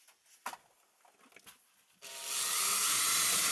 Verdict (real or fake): real